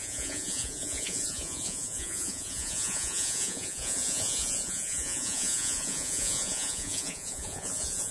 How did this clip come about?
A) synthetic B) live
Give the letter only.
A